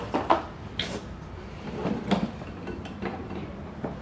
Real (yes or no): yes